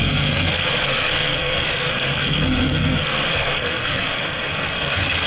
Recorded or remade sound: remade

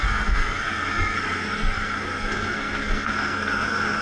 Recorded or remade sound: remade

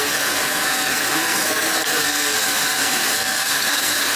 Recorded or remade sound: remade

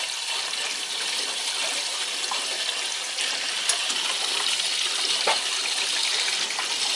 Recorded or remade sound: recorded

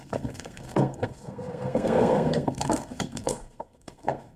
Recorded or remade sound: remade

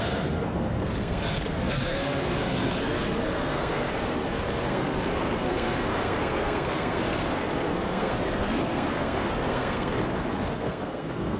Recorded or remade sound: remade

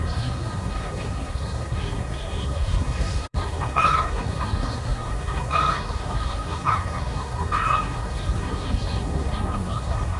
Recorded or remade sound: remade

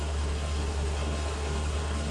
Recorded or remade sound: remade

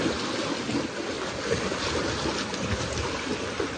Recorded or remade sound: recorded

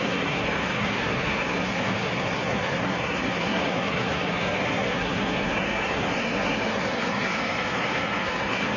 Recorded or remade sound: remade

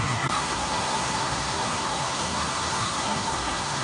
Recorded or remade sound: remade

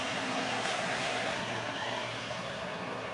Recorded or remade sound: remade